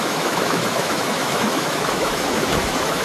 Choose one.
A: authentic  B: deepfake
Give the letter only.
B